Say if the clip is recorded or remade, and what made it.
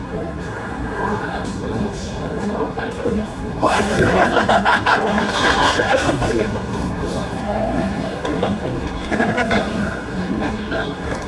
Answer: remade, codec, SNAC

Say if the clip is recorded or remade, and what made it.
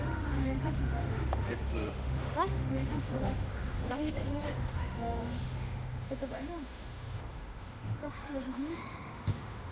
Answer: remade, autoencoder, DAC-VAE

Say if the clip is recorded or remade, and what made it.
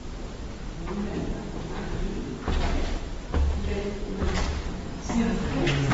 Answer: recorded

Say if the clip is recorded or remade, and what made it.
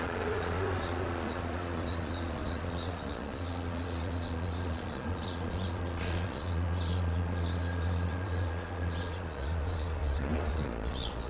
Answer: remade, vocoder, Vocos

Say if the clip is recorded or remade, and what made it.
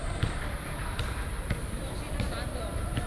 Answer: remade, vocoder, BigVGAN v2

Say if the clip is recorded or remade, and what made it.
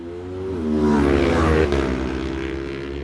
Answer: recorded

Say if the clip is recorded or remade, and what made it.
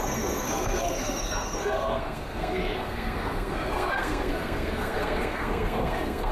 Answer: remade, codec, SNAC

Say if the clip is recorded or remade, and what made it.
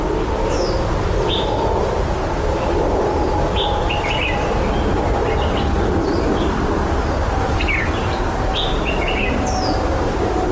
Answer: recorded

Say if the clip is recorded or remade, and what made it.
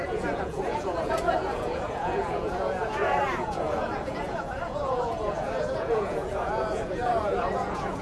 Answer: remade, vocoder, Vocos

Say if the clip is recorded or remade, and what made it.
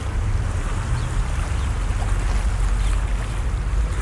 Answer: recorded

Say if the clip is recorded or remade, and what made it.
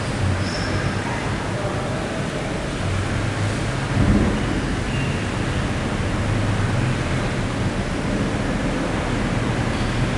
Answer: recorded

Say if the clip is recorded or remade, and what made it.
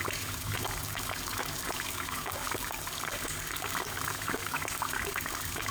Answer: remade, codec, DAC